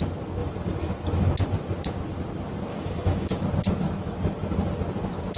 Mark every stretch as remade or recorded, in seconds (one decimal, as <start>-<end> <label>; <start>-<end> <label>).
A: 0.0-2.7 recorded; 2.7-3.4 remade; 3.4-5.4 recorded